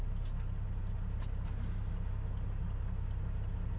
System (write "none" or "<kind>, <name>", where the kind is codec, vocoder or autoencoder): none